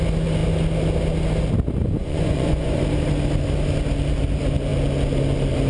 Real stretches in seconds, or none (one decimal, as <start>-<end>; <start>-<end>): 0.0-2.0; 2.8-5.7

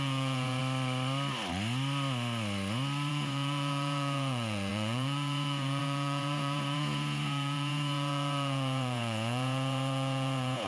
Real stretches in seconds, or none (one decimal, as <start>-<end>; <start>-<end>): 0.6-3.1

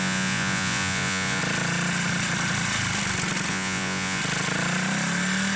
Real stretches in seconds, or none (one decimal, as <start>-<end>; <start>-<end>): 1.4-3.5; 4.2-5.6

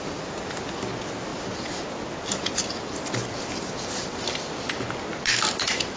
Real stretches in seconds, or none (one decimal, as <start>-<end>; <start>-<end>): 0.0-6.0

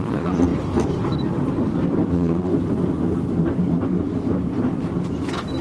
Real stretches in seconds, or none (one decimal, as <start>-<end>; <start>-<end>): 0.5-2.1; 2.5-5.6

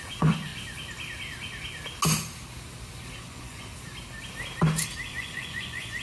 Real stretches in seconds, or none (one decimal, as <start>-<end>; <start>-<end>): 0.5-3.2; 3.7-5.1

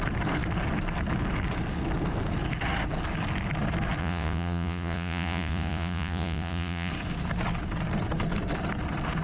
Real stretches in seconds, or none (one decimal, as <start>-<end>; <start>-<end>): 0.0-4.0; 6.9-9.2

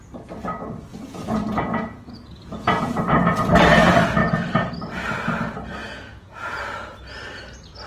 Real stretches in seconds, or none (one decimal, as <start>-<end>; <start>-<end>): 0.0-0.9; 3.0-5.8; 6.5-7.9